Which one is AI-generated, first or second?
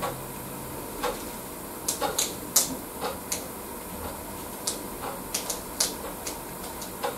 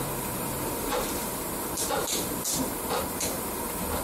second